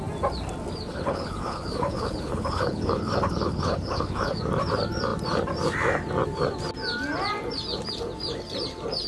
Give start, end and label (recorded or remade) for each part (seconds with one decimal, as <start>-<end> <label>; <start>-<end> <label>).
0.0-0.9 recorded; 0.9-4.4 remade; 4.4-9.1 recorded